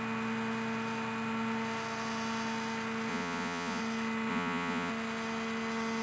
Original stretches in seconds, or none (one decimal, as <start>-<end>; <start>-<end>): 0.0-3.1; 3.8-4.3; 4.9-6.0